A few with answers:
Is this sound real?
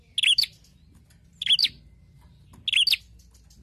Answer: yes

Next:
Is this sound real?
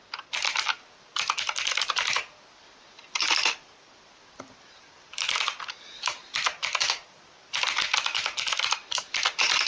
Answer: no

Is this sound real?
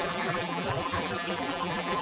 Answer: no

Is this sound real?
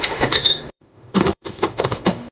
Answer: no